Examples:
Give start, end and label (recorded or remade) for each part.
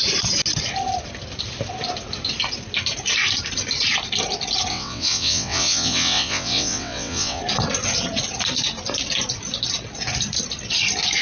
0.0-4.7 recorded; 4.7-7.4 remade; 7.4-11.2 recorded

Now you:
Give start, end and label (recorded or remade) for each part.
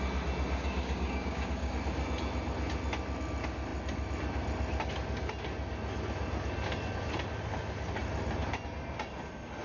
0.0-0.6 recorded; 0.6-1.7 remade; 1.7-9.6 recorded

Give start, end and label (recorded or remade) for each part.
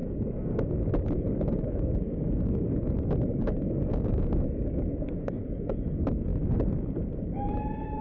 0.0-6.3 remade; 6.3-6.9 recorded; 6.9-8.0 remade